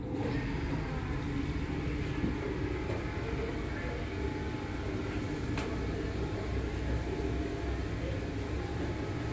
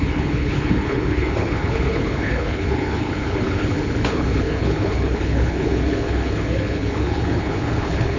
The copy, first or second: second